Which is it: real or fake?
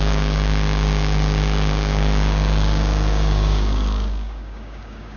fake